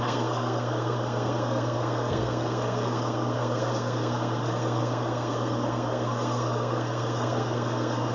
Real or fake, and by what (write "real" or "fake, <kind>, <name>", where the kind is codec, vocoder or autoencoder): fake, codec, SNAC